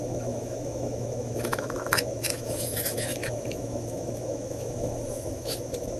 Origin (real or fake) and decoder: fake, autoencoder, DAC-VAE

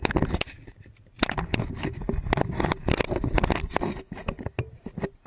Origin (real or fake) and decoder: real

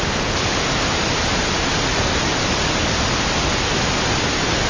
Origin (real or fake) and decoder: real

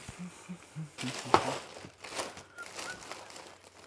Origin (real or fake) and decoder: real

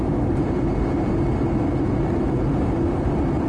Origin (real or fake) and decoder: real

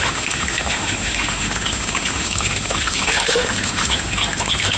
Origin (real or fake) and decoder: fake, autoencoder, DAC-VAE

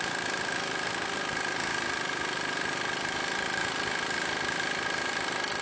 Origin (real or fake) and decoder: real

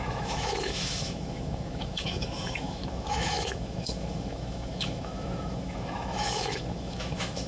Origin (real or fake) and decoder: fake, autoencoder, DAC-VAE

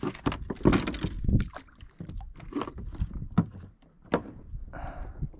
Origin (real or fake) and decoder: real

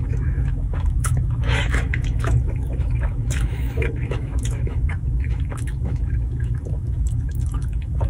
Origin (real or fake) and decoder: fake, autoencoder, DAC-VAE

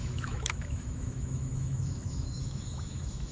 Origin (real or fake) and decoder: fake, autoencoder, DAC-VAE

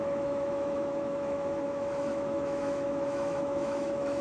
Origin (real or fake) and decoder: fake, autoencoder, DAC-VAE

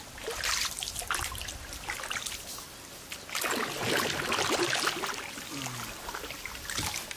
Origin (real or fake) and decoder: real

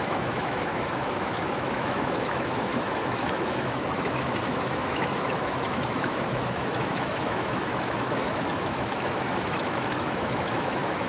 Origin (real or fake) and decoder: fake, autoencoder, DAC-VAE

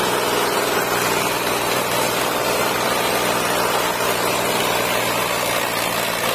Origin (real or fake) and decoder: real